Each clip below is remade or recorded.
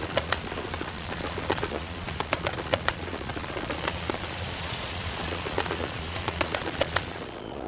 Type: remade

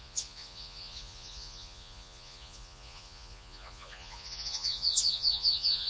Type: remade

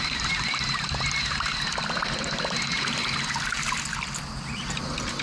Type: recorded